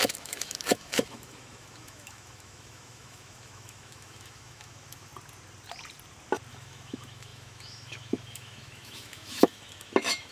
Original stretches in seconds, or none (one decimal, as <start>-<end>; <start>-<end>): 5.1-6.5